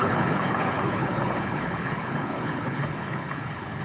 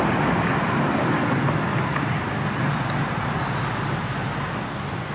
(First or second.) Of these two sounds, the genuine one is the second